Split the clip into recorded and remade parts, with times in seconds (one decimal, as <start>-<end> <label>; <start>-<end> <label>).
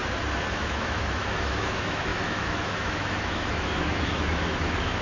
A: 0.0-0.5 recorded; 0.5-5.0 remade